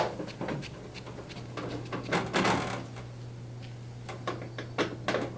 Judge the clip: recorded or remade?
recorded